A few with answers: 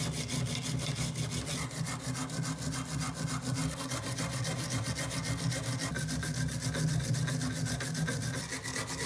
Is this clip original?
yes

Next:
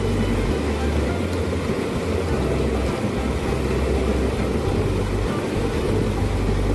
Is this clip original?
yes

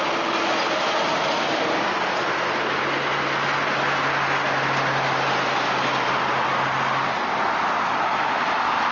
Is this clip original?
yes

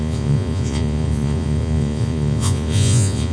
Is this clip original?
no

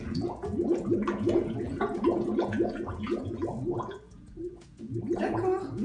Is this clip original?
no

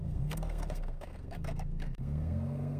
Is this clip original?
no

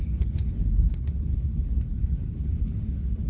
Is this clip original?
no